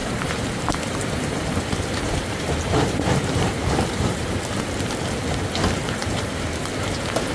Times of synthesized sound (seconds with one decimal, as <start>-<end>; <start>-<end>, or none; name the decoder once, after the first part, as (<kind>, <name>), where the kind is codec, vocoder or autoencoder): 0.0-4.4 (vocoder, BigVGAN v2); 6.0-6.6

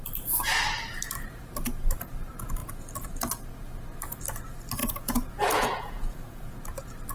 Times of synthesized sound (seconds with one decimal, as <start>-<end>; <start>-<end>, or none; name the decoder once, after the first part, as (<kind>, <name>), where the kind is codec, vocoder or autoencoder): 4.8-6.6 (vocoder, Vocos)